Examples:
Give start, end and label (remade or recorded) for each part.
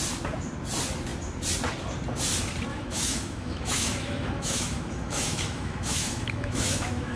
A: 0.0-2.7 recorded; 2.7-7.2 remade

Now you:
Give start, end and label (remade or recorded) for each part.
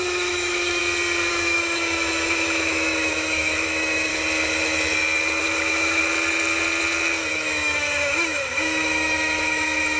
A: 0.0-0.8 remade; 0.8-1.3 recorded; 1.3-4.1 remade; 4.1-5.4 recorded; 5.4-6.0 remade; 6.0-7.1 recorded; 7.1-10.0 remade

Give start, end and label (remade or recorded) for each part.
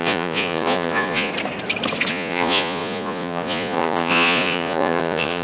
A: 0.0-1.3 remade; 1.3-2.1 recorded; 2.1-5.4 remade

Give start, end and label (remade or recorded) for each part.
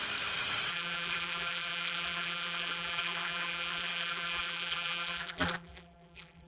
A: 0.0-0.7 recorded; 0.7-6.5 remade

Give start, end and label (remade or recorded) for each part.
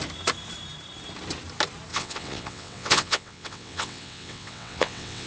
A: 0.0-1.9 recorded; 1.9-5.3 remade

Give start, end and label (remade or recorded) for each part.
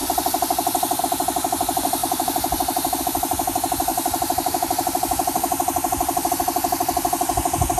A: 0.0-2.0 recorded; 2.0-3.0 remade; 3.0-3.9 recorded; 3.9-6.3 remade; 6.3-7.8 recorded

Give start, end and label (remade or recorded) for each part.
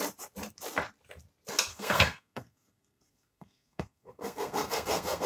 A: 0.0-1.7 recorded; 1.7-5.3 remade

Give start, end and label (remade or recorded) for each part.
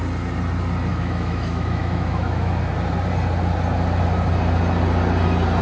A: 0.0-0.9 recorded; 0.9-2.6 remade; 2.6-5.6 recorded